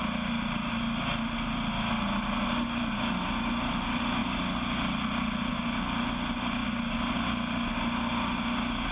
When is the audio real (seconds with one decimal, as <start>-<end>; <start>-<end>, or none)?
0.0-8.9